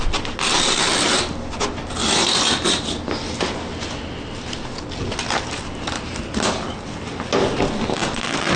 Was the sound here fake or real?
real